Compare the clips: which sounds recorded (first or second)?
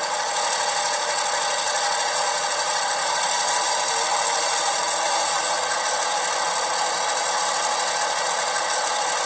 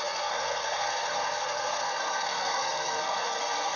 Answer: first